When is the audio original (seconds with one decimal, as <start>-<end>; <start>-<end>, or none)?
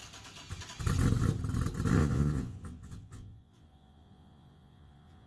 0.0-2.0